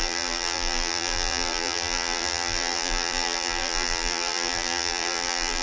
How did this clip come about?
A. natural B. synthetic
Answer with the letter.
B